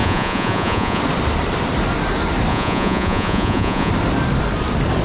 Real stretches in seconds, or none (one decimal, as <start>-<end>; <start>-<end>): 1.0-2.5; 3.9-5.0